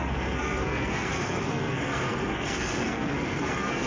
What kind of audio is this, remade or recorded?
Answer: remade